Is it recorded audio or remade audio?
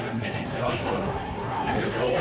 remade